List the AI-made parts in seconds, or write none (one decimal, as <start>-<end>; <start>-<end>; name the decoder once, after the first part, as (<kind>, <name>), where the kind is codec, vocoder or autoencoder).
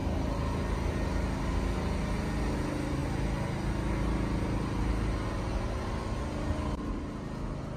none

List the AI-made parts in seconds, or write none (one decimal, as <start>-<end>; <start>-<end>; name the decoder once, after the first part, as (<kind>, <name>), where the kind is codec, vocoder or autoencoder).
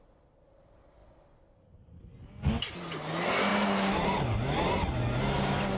none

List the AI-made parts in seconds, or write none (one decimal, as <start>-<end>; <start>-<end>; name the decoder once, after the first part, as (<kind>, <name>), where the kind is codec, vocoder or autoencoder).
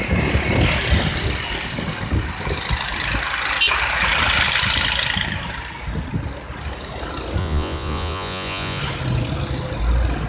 7.4-8.8 (vocoder, Vocos)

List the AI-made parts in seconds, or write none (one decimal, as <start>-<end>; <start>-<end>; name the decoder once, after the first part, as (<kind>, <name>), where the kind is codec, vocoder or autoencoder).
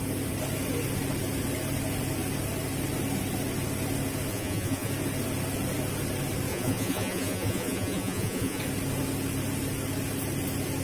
4.3-4.9 (vocoder, Vocos); 6.5-8.6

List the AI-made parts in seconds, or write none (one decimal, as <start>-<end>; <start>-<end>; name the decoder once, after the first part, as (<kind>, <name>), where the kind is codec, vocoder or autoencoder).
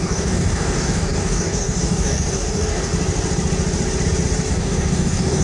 0.0-2.9 (codec, DAC); 4.5-5.4